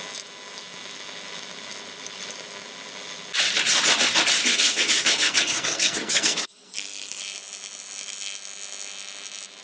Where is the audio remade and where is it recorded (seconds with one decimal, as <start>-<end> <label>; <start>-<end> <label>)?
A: 0.0-4.5 recorded; 4.5-7.2 remade; 7.2-9.6 recorded